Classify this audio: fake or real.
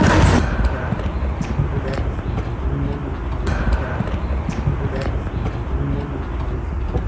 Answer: real